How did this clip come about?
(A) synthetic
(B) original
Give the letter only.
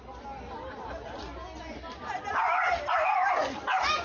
B